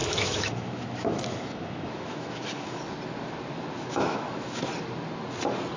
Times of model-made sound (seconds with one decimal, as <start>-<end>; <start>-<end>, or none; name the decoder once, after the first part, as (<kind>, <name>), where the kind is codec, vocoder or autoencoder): 0.0-2.8 (autoencoder, DAC-VAE); 3.9-4.7